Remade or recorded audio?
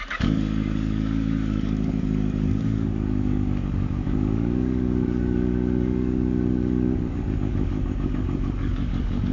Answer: remade